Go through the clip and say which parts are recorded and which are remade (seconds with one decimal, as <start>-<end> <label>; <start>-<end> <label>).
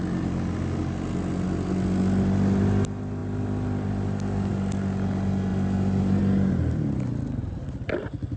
0.0-8.4 recorded